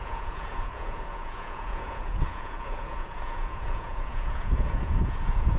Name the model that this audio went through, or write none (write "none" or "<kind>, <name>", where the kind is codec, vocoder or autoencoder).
vocoder, Vocos